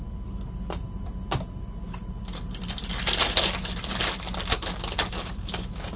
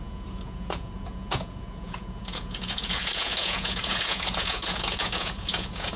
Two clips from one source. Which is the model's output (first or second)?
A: second